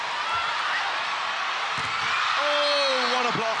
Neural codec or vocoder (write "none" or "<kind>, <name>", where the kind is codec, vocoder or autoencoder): none